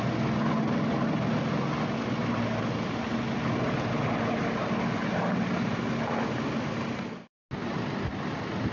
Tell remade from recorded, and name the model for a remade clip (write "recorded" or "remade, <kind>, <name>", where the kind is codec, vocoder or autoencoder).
recorded